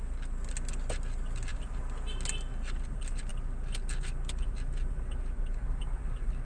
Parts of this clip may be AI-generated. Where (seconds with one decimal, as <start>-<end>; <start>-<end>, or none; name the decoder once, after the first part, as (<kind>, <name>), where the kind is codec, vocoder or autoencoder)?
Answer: none